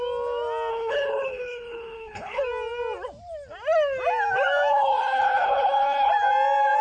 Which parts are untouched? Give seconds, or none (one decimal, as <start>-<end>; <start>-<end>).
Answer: 0.0-0.7; 2.4-4.7; 6.1-6.8

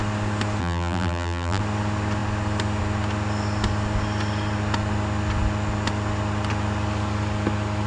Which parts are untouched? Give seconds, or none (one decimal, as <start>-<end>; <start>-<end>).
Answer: 0.0-0.6; 1.6-7.9

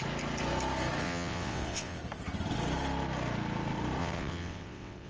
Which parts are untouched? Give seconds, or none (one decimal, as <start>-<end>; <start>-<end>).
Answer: 0.0-1.0; 2.0-4.0

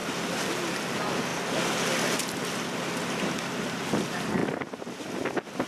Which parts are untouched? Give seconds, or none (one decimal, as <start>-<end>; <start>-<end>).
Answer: 0.0-5.7

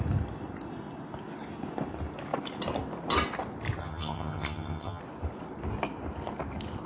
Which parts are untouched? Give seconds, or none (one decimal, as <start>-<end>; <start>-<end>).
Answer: 0.0-3.8; 5.0-6.9

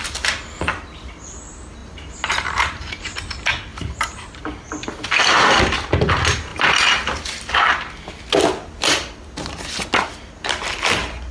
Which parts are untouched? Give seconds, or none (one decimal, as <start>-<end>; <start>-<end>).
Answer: 0.0-1.8; 2.9-3.7; 4.4-6.5; 7.6-11.3

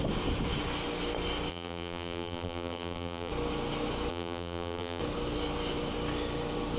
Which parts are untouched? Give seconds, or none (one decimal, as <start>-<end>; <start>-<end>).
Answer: 0.0-1.5; 3.3-4.1; 5.0-6.8

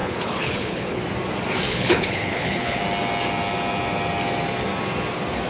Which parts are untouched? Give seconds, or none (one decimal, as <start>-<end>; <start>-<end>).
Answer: 1.0-1.7; 2.8-5.5